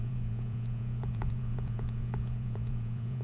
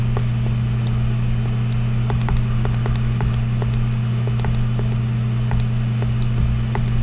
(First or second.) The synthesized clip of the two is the first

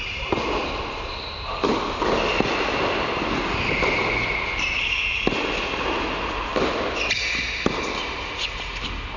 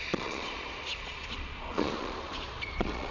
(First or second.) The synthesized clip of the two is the second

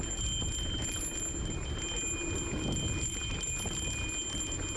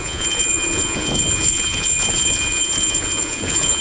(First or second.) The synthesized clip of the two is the second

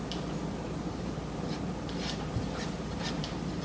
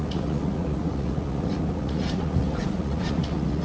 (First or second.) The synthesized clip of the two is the second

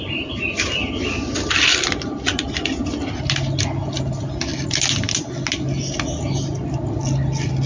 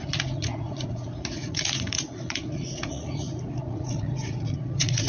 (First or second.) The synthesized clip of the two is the second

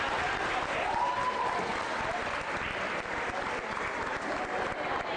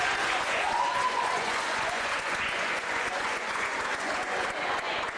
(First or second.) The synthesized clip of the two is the second